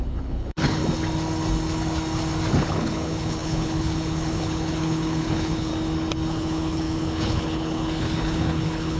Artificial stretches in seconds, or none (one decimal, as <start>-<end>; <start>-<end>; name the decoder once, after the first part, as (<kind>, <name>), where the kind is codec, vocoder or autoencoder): 0.0-0.8 (codec, HILCodec); 2.6-5.7; 6.3-9.0